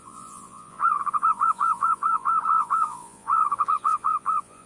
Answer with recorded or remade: remade